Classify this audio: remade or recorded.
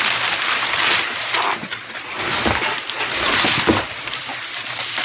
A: remade